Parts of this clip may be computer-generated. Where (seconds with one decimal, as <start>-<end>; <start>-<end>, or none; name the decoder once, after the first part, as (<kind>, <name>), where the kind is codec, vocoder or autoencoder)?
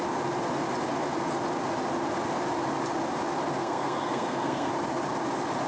3.6-4.7 (codec, SNAC)